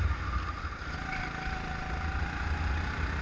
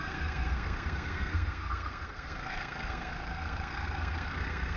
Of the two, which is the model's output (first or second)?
second